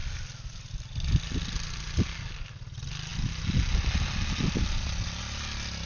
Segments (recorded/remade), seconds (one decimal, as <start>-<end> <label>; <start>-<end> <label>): 0.0-5.9 recorded